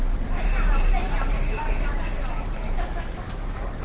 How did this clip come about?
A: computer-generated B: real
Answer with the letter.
A